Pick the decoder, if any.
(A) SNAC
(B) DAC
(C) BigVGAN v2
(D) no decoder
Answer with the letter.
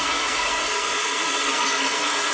A